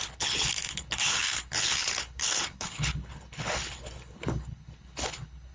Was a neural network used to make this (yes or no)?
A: yes